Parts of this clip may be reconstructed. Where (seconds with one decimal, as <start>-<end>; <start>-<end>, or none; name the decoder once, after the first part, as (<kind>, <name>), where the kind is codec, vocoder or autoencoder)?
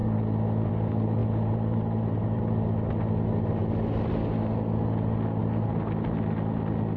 1.2-2.4 (vocoder, BigVGAN v2)